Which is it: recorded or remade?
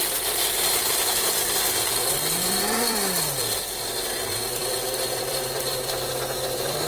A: remade